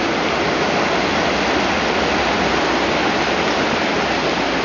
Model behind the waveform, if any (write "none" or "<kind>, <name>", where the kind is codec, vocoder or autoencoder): none